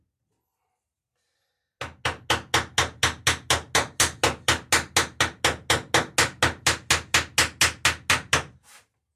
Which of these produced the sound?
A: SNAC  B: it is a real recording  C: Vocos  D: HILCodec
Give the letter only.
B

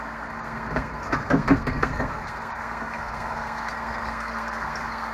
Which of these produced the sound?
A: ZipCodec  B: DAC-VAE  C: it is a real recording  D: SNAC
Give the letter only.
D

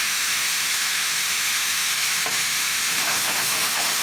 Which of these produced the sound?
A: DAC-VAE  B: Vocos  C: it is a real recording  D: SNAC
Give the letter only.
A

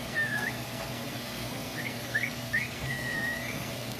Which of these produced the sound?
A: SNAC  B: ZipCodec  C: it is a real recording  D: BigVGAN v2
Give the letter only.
A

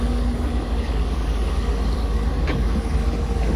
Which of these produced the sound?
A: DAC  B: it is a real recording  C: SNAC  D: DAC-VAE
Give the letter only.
A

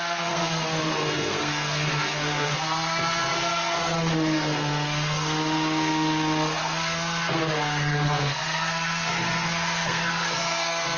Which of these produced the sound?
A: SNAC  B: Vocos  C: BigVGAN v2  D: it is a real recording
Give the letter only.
A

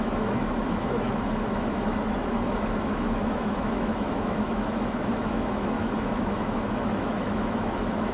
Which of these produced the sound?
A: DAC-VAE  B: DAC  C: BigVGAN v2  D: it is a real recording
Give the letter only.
A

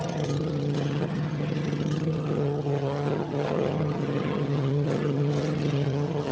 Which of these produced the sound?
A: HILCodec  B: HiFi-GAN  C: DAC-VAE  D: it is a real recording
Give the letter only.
B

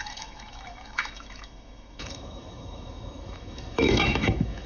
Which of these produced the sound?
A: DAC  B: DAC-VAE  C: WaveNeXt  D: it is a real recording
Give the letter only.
B